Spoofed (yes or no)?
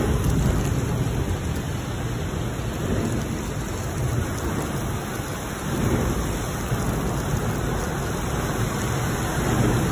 no